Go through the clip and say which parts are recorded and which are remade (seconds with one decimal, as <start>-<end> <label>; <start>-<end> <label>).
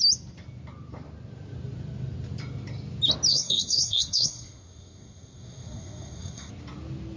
0.0-3.3 recorded; 3.3-6.5 remade; 6.5-7.2 recorded